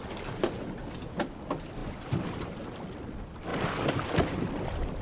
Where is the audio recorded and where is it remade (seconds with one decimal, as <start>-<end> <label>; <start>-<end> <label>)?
0.0-5.0 recorded